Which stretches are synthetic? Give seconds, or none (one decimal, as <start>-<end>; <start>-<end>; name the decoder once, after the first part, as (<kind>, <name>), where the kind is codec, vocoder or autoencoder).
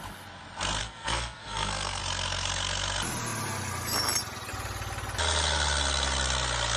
0.8-2.0 (codec, SNAC)